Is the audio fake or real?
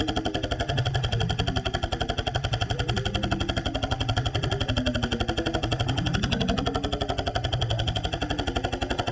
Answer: real